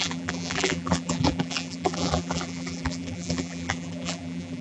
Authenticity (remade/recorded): remade